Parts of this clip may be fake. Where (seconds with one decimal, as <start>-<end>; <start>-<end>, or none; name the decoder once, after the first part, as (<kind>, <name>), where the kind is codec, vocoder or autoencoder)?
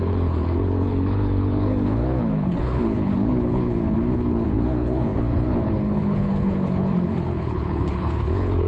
0.0-8.7 (codec, HILCodec)